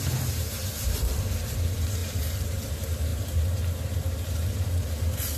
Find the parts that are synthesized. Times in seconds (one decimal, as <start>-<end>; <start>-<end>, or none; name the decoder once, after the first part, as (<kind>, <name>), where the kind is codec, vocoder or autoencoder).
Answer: 0.0-5.4 (vocoder, BigVGAN v2)